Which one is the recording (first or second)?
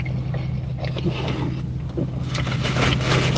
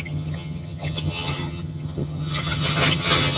first